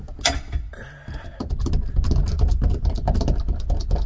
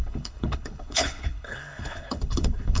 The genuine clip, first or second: first